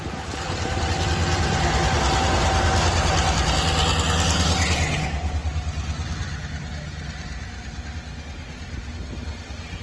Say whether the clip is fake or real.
real